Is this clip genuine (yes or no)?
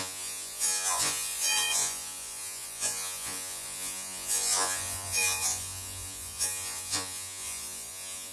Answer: no